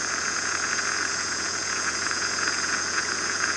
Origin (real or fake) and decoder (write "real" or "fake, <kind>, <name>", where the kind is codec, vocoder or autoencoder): fake, vocoder, Vocos